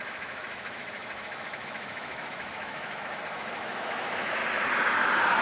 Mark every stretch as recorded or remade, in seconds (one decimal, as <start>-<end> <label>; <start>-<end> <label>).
0.0-4.4 remade; 4.4-5.4 recorded